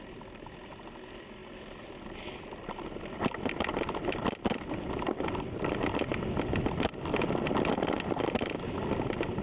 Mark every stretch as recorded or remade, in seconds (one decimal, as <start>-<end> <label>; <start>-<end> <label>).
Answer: 0.0-9.4 recorded